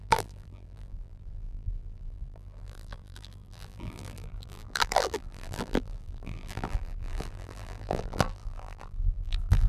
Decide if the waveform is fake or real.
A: fake